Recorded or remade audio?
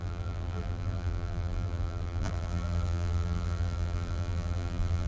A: remade